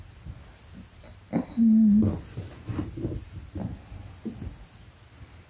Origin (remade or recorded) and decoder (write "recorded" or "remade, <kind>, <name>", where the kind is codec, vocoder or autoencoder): recorded